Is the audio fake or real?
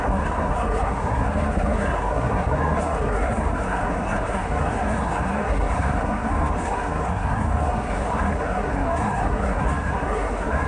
fake